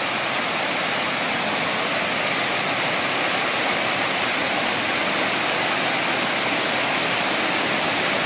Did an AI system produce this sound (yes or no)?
no